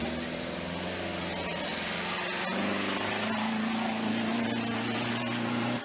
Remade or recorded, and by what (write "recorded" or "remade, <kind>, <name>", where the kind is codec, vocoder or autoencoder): recorded